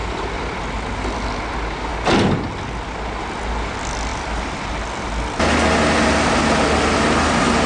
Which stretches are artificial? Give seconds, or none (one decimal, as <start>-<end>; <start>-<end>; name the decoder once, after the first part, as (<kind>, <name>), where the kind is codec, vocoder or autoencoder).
0.0-0.7 (vocoder, BigVGAN v2); 4.1-4.7